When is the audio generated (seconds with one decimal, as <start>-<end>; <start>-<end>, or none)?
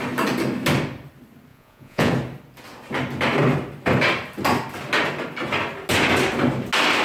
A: 1.5-2.1